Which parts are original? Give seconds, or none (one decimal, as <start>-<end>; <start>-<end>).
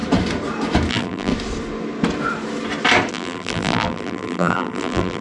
0.0-0.9; 1.3-3.1